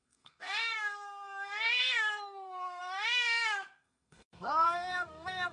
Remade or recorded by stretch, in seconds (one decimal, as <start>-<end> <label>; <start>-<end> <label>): 0.0-5.5 remade